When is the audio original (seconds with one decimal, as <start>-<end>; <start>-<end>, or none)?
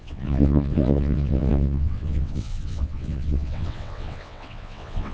none